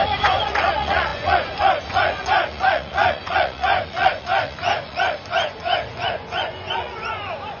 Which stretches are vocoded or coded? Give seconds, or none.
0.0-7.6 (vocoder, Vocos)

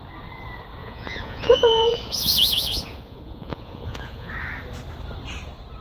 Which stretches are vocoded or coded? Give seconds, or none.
0.8-4.3 (vocoder, Vocos)